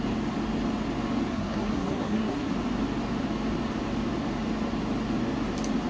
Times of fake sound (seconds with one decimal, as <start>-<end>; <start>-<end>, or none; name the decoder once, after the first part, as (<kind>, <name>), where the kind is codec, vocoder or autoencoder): 1.3-2.5 (codec, SNAC)